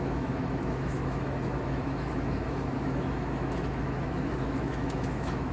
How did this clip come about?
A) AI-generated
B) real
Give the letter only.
A